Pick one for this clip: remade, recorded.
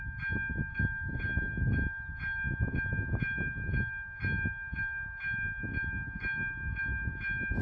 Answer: recorded